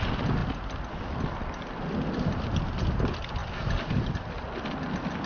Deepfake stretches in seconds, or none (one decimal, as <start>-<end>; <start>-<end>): none